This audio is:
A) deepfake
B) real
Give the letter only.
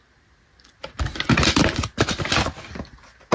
B